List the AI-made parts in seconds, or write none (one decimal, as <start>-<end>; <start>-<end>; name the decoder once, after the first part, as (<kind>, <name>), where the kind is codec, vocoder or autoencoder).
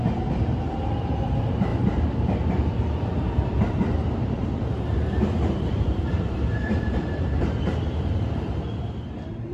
0.0-9.5 (vocoder, BigVGAN v2)